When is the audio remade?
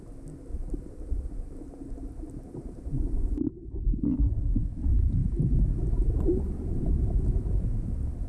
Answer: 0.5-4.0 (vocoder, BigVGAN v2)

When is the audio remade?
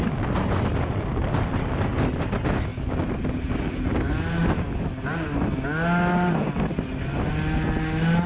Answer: none